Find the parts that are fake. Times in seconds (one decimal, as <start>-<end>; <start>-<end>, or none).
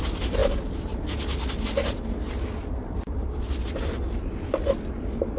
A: none